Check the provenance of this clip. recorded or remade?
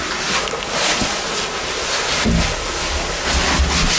recorded